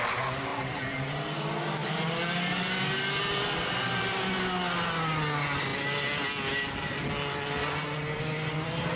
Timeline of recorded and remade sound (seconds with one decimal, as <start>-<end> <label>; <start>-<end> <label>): 0.0-9.0 recorded